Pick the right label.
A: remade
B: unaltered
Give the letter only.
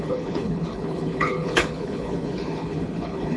A